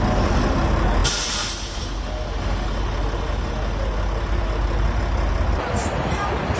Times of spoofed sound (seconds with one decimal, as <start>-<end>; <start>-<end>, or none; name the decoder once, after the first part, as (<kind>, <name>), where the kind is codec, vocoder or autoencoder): none